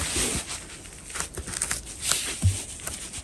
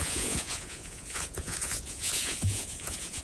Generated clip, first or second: second